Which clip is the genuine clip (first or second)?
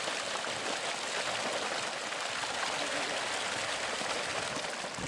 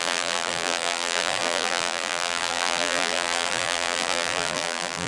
first